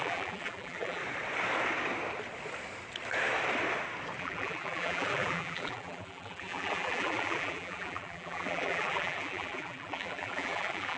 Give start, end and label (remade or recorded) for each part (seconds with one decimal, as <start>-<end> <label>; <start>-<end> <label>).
0.0-1.0 remade; 1.0-4.2 recorded; 4.2-11.0 remade